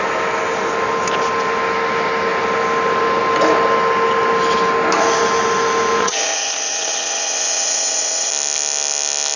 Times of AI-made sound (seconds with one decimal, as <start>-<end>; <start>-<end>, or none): 6.0-8.3